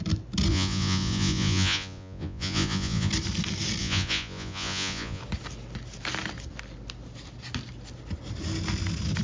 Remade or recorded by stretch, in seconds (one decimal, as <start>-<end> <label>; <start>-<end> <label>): 0.0-0.5 recorded; 0.5-3.1 remade; 3.1-3.8 recorded; 3.8-5.2 remade; 5.2-9.2 recorded